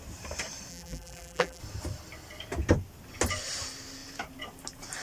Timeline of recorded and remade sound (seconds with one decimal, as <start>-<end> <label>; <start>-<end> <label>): 0.0-0.7 recorded; 0.7-1.6 remade; 1.6-5.0 recorded